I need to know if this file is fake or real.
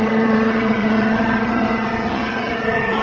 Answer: fake